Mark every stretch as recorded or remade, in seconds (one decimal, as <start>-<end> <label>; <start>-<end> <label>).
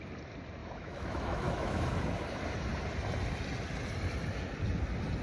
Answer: 0.0-0.6 recorded; 0.6-1.8 remade; 1.8-5.2 recorded